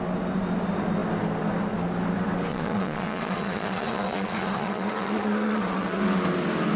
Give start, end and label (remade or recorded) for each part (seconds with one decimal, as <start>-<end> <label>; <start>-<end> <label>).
0.0-2.5 recorded; 2.5-6.0 remade; 6.0-6.8 recorded